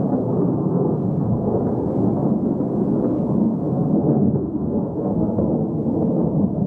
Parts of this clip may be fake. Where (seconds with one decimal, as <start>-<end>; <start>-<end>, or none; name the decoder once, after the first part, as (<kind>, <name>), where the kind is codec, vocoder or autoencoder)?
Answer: 0.6-1.6 (codec, SNAC); 3.4-5.4

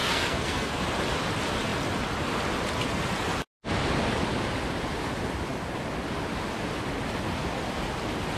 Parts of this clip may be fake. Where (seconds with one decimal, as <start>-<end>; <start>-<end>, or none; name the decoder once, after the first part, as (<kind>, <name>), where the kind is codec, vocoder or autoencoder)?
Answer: 0.0-0.8 (codec, SNAC)

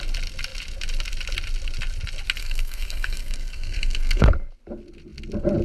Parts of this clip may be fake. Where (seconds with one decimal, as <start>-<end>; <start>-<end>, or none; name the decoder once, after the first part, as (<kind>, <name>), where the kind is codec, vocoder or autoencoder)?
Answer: 2.4-4.3 (codec, SNAC)

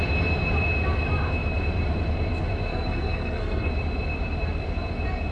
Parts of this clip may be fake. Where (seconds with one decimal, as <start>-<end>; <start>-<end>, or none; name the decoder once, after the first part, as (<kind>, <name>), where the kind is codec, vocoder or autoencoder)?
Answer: 2.7-3.7 (codec, SNAC)

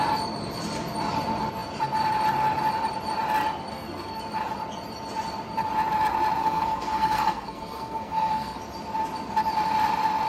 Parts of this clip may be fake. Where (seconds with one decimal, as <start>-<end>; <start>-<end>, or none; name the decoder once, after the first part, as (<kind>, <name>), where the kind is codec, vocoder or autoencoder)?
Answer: 3.7-4.2 (codec, SNAC); 6.4-8.6

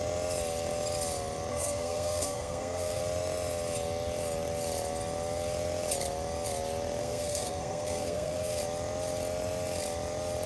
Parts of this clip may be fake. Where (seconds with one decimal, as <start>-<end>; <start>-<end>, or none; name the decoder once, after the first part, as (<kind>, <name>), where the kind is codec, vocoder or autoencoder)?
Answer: 1.5-3.0 (codec, SNAC); 7.0-8.6